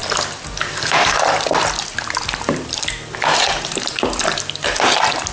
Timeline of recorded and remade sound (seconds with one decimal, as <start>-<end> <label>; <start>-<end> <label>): 0.0-3.3 recorded; 3.3-4.0 remade; 4.0-5.3 recorded